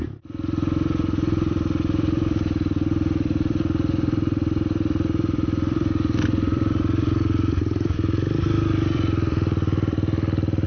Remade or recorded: remade